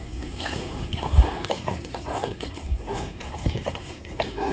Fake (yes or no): yes